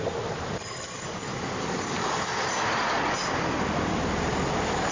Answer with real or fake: real